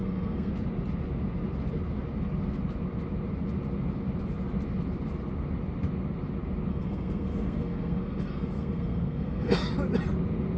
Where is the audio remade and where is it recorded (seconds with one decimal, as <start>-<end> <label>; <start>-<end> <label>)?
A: 0.0-0.5 remade; 0.5-6.7 recorded; 6.7-9.6 remade; 9.6-10.6 recorded